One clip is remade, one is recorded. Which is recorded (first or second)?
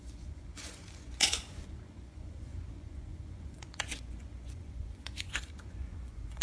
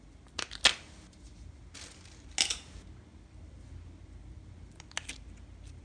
second